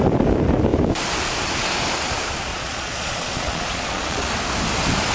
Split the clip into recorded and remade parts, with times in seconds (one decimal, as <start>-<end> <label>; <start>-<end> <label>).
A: 0.0-2.5 recorded; 2.5-4.3 remade; 4.3-5.1 recorded